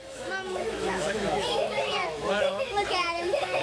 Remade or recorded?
remade